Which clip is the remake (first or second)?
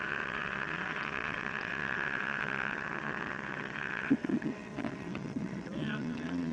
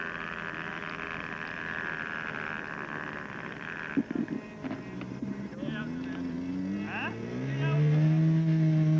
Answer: first